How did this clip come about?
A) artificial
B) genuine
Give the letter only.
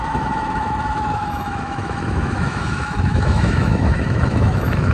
A